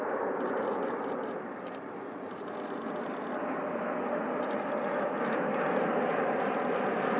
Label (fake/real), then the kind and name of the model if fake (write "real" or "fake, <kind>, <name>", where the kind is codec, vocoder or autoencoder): real